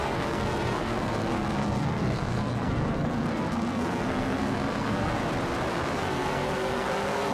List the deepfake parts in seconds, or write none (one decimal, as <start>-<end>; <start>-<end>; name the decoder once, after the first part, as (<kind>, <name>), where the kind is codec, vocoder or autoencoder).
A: 0.0-5.2 (codec, SNAC); 5.7-7.3